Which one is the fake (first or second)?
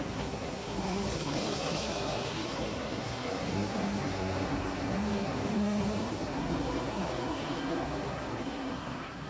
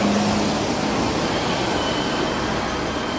first